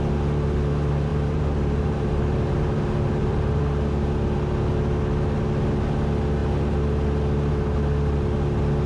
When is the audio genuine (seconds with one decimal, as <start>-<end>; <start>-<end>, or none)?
0.0-1.1; 3.6-8.9